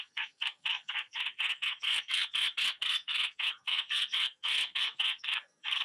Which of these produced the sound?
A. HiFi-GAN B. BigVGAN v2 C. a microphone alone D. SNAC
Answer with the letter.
D